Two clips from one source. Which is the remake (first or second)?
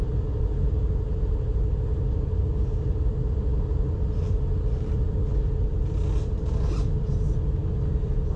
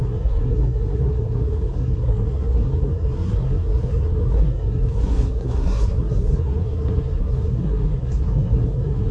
second